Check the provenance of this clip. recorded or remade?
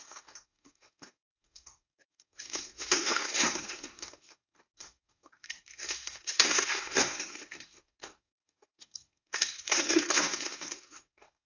remade